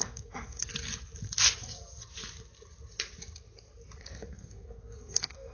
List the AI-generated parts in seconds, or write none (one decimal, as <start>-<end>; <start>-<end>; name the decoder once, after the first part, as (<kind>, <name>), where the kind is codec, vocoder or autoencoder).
0.0-0.7 (codec, SNAC); 4.0-5.5